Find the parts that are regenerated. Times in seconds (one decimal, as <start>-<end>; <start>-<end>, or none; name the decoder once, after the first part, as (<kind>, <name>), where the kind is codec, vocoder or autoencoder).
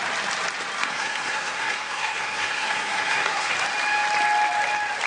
0.8-3.5 (codec, SNAC)